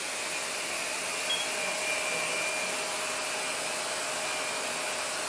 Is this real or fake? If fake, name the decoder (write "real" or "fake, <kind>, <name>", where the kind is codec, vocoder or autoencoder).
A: real